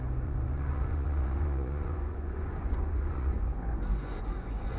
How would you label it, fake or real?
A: fake